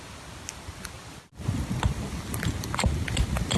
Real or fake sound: real